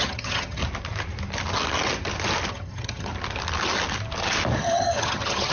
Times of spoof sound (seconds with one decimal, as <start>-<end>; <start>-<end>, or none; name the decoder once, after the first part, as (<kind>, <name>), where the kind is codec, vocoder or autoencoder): 0.0-0.6 (vocoder, HiFi-GAN); 2.5-3.1; 4.6-5.5